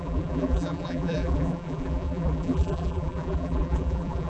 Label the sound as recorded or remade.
remade